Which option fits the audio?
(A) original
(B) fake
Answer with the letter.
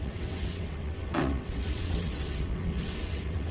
B